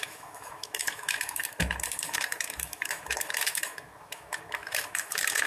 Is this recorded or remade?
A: remade